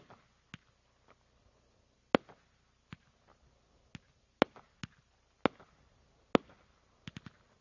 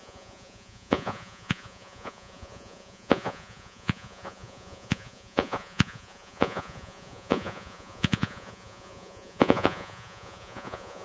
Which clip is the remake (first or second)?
second